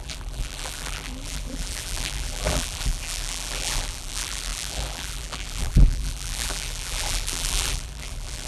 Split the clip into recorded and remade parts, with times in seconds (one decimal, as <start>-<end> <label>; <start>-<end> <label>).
0.0-8.5 remade